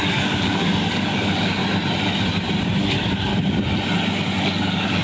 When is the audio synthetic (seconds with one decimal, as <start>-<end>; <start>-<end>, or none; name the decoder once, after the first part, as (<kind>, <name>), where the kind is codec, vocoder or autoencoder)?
0.0-1.6 (codec, DAC); 2.9-3.3; 4.4-5.0